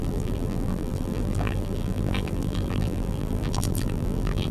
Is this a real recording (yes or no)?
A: no